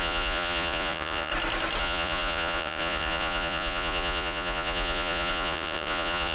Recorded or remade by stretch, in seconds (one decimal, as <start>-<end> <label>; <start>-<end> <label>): 0.0-1.3 remade; 1.3-1.8 recorded; 1.8-6.3 remade